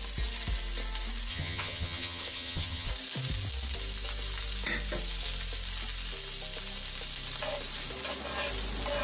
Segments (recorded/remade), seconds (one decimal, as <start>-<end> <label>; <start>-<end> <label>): 0.0-1.3 recorded; 1.3-2.9 remade; 2.9-9.0 recorded

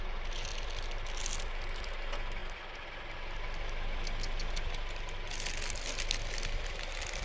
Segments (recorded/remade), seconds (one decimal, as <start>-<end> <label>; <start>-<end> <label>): 0.0-7.2 recorded

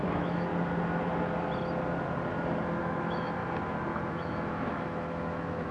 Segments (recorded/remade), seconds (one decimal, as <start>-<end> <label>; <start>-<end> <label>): 0.0-0.5 remade; 0.5-2.8 recorded; 2.8-3.4 remade; 3.4-4.1 recorded; 4.1-5.7 remade